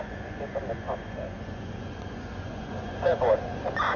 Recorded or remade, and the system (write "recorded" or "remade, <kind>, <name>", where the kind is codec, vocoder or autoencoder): remade, vocoder, Vocos